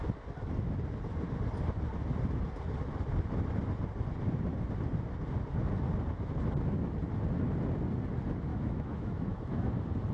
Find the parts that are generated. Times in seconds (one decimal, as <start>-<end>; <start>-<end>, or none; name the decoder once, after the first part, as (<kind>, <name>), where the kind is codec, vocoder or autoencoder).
8.5-9.7 (autoencoder, DAC-VAE)